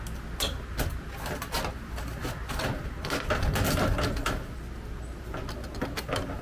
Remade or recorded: recorded